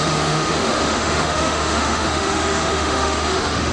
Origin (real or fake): fake